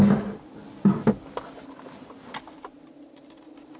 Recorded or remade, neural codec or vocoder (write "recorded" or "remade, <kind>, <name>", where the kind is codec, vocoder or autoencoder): recorded